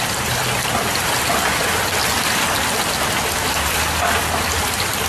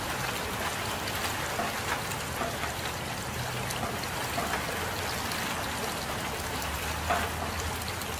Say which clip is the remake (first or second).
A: first